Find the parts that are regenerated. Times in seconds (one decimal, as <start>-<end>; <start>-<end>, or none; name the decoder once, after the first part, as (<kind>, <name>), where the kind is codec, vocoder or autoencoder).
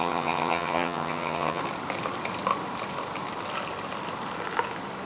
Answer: 0.0-1.6 (vocoder, HiFi-GAN)